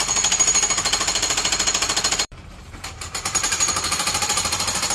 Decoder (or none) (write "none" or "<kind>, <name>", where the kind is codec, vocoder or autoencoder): vocoder, BigVGAN v2